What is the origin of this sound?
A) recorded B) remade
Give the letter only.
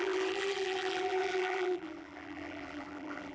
B